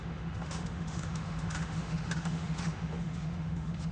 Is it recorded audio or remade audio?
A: remade